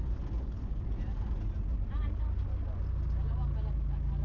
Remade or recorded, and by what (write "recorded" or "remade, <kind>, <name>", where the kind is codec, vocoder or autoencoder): recorded